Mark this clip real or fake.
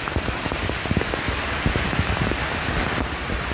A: real